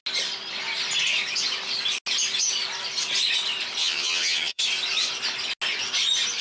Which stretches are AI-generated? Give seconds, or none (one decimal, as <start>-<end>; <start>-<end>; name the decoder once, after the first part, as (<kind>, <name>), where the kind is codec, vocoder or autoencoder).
3.8-4.6 (vocoder, HiFi-GAN)